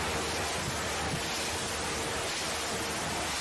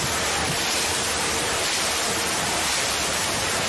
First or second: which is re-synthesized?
second